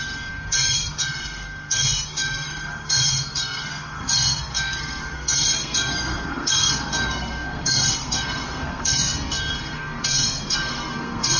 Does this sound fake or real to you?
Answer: fake